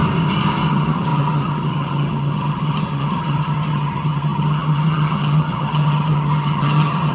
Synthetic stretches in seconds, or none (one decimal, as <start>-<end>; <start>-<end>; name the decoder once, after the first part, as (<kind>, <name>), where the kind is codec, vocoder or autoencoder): 0.7-7.1 (vocoder, HiFi-GAN)